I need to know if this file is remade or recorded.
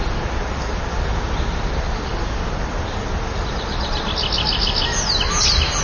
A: recorded